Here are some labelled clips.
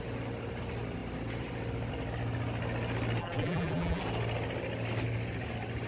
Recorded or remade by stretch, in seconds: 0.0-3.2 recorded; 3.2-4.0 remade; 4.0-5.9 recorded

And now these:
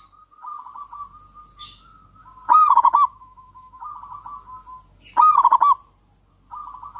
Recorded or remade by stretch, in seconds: 0.0-2.6 recorded; 2.6-3.9 remade; 3.9-7.0 recorded

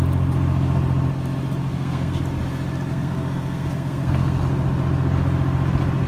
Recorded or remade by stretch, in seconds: 0.0-1.7 recorded; 1.7-2.2 remade; 2.2-2.9 recorded; 2.9-4.4 remade; 4.4-6.1 recorded